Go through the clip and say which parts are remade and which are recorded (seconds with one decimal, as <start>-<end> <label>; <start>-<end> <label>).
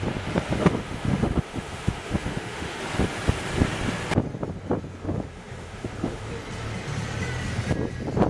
0.0-0.6 recorded; 0.6-2.8 remade; 2.8-5.0 recorded; 5.0-6.3 remade; 6.3-8.3 recorded